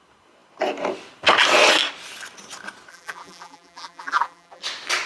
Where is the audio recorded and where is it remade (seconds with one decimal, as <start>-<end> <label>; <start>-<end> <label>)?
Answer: 0.0-2.9 recorded; 2.9-4.6 remade; 4.6-5.1 recorded